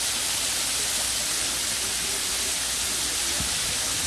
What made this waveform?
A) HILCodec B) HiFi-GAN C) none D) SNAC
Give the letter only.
C